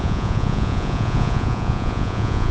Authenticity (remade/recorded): remade